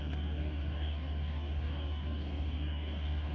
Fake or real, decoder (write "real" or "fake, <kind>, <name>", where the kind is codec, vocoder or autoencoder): fake, codec, DAC